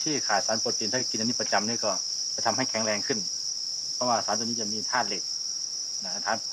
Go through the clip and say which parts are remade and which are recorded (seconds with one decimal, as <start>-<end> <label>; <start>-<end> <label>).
0.0-1.0 recorded; 1.0-2.1 remade; 2.1-6.5 recorded